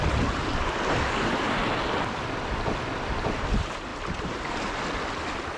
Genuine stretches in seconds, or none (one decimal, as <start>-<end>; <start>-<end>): 0.0-5.6